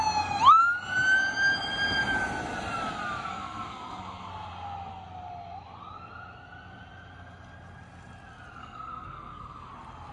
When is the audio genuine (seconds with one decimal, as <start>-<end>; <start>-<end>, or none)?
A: 0.0-3.3; 4.3-8.6; 9.7-10.1